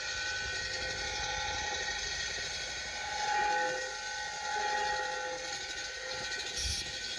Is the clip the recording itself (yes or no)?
yes